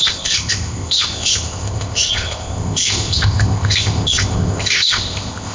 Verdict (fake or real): fake